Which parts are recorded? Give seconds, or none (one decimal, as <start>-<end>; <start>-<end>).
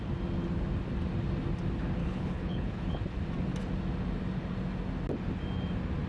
0.0-2.0; 3.0-6.1